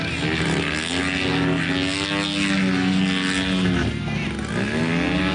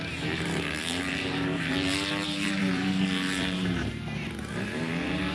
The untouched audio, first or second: first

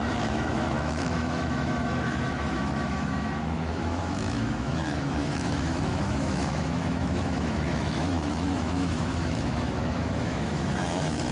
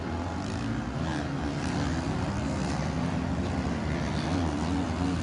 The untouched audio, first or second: second